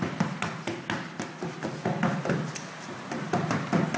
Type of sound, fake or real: real